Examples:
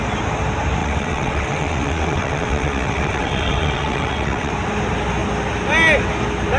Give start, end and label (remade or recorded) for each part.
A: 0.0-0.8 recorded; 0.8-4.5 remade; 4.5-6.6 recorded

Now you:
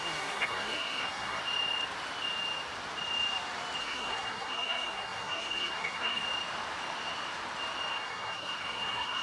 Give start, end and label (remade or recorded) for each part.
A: 0.0-1.4 remade; 1.4-3.8 recorded; 3.8-6.2 remade; 6.2-7.9 recorded; 7.9-9.2 remade

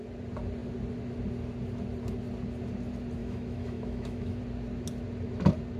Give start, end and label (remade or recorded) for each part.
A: 0.0-3.2 recorded; 3.2-4.4 remade; 4.4-5.8 recorded

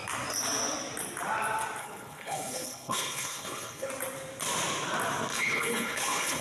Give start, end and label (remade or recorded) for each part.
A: 0.0-1.8 recorded; 1.8-3.9 remade; 3.9-5.3 recorded; 5.3-6.4 remade

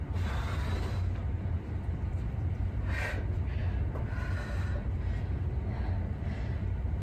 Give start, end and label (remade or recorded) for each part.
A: 0.0-1.2 recorded; 1.2-2.9 remade; 2.9-7.0 recorded

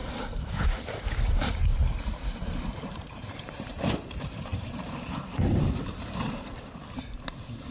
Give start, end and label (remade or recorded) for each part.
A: 0.0-7.7 remade

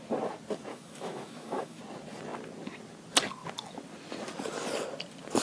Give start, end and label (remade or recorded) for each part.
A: 0.0-0.7 recorded; 0.7-1.8 remade; 1.8-5.4 recorded